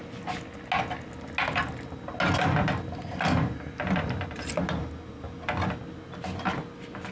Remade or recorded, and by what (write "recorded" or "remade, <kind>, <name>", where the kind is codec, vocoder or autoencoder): recorded